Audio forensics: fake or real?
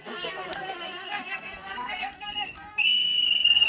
fake